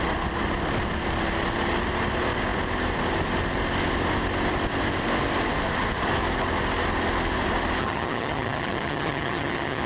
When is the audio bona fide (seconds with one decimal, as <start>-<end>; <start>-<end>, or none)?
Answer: 0.0-7.8